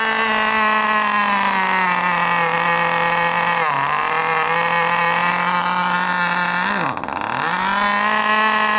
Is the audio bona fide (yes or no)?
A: yes